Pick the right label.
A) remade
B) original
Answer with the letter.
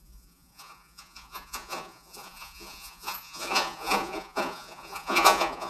A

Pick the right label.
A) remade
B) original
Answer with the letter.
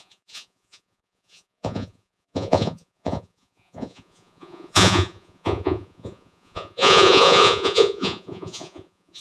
A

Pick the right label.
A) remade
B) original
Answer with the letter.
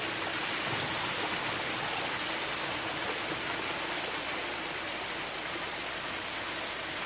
B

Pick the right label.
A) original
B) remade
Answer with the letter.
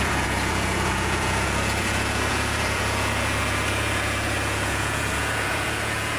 B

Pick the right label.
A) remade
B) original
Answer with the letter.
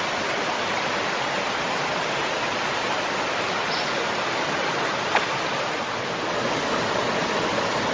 B